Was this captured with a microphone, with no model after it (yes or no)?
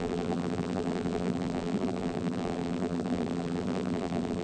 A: no